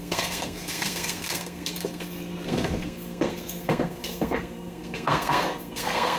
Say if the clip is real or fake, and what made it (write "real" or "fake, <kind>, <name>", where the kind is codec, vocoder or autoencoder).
fake, codec, SNAC